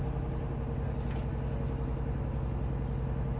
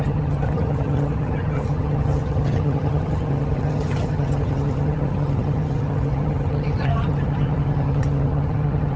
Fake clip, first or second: second